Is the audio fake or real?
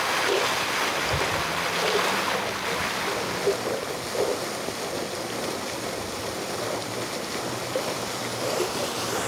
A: real